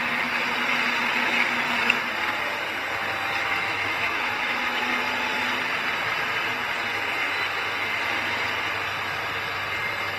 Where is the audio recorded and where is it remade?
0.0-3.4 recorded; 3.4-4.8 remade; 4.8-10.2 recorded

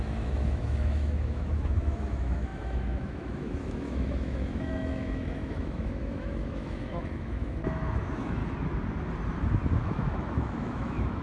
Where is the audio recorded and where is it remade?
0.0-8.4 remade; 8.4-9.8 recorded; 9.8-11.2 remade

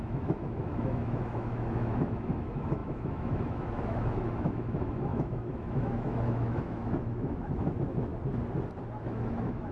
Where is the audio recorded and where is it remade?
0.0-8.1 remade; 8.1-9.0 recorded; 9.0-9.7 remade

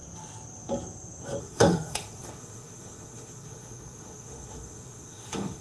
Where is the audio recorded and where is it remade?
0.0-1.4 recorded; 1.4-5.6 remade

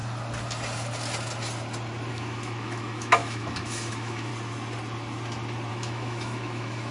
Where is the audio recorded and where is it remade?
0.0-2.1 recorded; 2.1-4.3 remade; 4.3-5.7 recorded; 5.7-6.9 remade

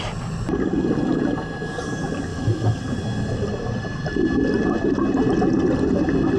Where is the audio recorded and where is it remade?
0.0-2.3 recorded; 2.3-2.8 remade; 2.8-6.4 recorded

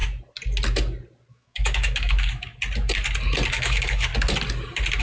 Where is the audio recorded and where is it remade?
0.0-1.3 recorded; 1.3-2.5 remade; 2.5-3.5 recorded; 3.5-4.1 remade; 4.1-5.0 recorded